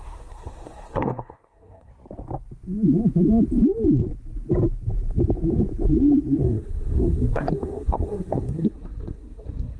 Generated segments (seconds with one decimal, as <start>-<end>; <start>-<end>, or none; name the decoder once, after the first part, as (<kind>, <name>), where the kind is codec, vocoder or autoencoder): 0.0-1.9 (codec, SNAC); 6.4-9.8